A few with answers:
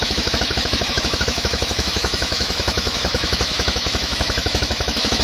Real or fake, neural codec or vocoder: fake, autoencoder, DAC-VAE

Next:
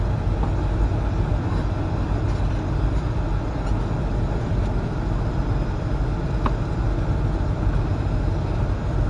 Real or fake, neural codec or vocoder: real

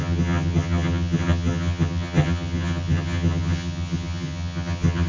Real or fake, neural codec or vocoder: fake, vocoder, HiFi-GAN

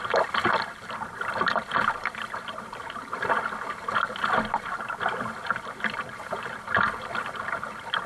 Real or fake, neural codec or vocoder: real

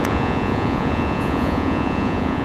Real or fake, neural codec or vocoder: fake, vocoder, Vocos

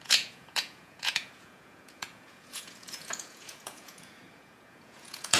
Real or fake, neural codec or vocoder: fake, vocoder, Vocos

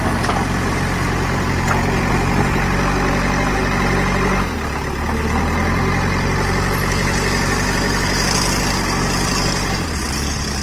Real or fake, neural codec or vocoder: real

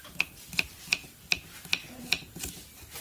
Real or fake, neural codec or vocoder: real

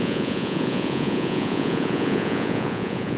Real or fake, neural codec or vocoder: fake, vocoder, Vocos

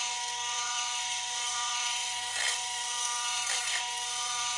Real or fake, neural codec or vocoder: fake, codec, SNAC